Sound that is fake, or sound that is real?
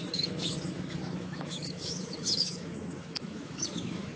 fake